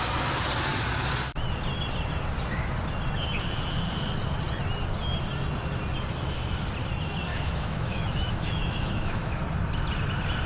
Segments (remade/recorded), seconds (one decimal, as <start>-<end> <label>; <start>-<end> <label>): 0.0-7.3 recorded; 7.3-9.4 remade; 9.4-10.5 recorded